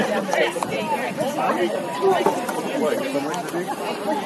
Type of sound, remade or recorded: remade